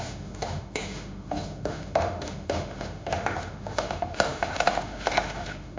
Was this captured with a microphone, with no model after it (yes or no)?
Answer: no